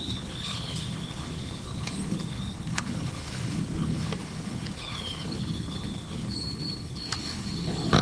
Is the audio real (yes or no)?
no